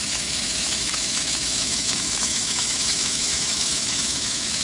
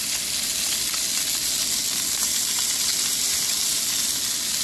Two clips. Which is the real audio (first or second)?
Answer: second